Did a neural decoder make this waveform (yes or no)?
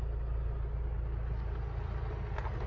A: no